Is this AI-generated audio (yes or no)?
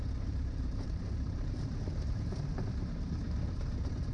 yes